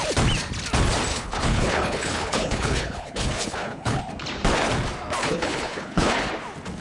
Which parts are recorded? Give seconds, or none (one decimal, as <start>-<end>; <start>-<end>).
0.0-1.1; 4.0-5.2; 6.3-6.8